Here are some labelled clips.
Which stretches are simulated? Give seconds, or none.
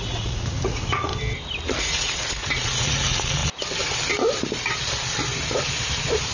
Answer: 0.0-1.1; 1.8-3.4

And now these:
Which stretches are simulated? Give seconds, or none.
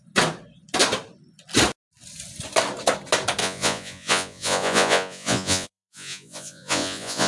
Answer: 3.4-7.3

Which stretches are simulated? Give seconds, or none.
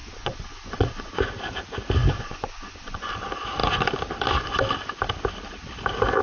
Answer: 0.0-1.1; 2.0-3.1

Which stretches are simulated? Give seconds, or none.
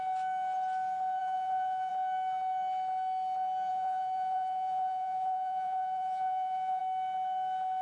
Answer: 1.2-1.9; 3.7-6.8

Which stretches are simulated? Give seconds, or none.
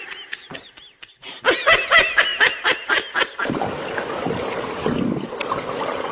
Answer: none